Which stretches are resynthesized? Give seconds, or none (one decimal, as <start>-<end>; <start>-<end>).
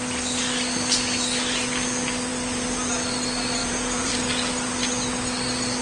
3.6-4.1